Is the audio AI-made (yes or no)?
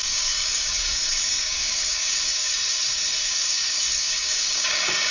yes